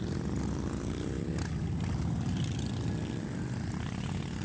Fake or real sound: real